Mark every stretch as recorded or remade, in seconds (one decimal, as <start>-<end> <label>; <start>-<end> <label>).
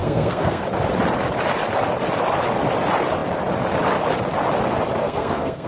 0.0-0.6 remade; 0.6-5.0 recorded; 5.0-5.7 remade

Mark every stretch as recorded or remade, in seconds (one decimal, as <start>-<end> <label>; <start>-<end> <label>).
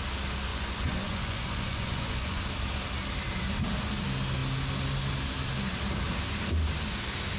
0.0-0.5 recorded; 0.5-2.4 remade; 2.4-7.4 recorded